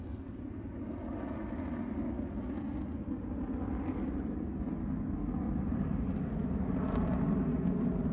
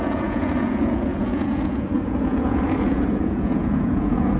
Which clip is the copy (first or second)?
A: second